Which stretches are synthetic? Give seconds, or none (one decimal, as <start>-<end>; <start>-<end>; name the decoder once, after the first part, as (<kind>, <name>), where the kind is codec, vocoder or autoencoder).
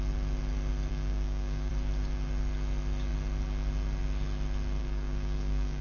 0.9-1.7 (codec, DAC); 4.8-5.8